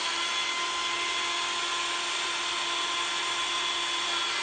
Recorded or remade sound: recorded